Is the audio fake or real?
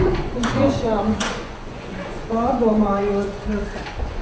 fake